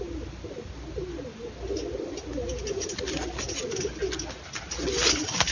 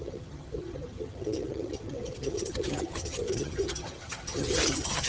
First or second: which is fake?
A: second